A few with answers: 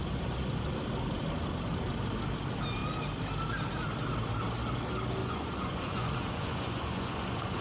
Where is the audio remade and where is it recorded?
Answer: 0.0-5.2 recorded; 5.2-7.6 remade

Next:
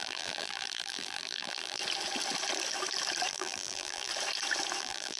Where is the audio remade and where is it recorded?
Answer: 0.0-1.8 remade; 1.8-3.3 recorded; 3.3-4.1 remade; 4.1-4.8 recorded; 4.8-5.2 remade

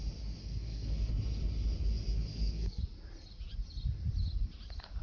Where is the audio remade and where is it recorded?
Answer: 0.0-0.4 recorded; 0.4-1.1 remade; 1.1-2.3 recorded; 2.3-2.8 remade; 2.8-5.0 recorded

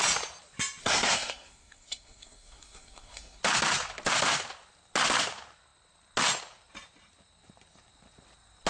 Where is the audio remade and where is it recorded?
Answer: 0.0-0.8 recorded; 0.8-3.4 remade; 3.4-8.7 recorded

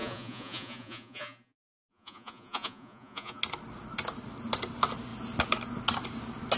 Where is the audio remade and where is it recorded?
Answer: 0.0-3.4 remade; 3.4-6.6 recorded

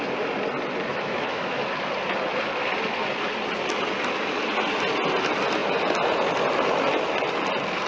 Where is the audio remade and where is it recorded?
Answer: 0.0-0.9 recorded; 0.9-1.6 remade; 1.6-7.9 recorded